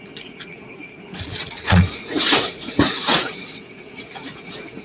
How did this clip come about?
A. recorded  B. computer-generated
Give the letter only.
B